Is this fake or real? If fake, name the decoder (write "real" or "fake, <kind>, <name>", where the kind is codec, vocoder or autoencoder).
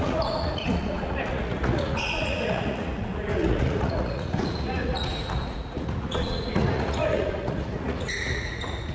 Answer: fake, vocoder, Vocos